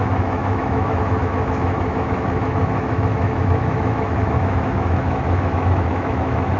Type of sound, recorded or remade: remade